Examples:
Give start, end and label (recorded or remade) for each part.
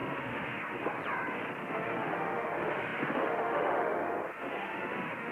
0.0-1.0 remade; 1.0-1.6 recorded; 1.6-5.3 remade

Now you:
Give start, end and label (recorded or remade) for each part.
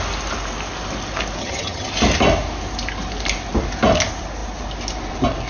0.0-1.4 recorded; 1.4-1.9 remade; 1.9-5.5 recorded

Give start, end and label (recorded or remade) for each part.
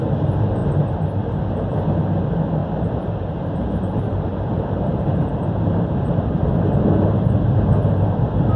0.0-0.6 recorded; 0.6-1.4 remade; 1.4-2.6 recorded; 2.6-7.5 remade; 7.5-8.6 recorded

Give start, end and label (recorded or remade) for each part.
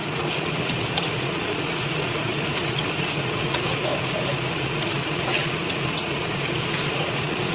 0.0-3.9 remade; 3.9-4.5 recorded; 4.5-7.5 remade